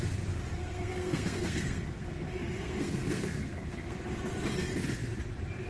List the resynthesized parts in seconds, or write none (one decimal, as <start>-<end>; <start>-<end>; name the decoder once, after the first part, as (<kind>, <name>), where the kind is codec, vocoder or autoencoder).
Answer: 0.6-4.0 (codec, SNAC)